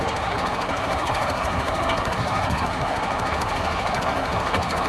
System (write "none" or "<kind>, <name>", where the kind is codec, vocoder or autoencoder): codec, SNAC